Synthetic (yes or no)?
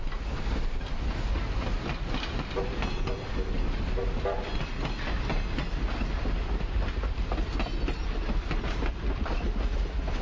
no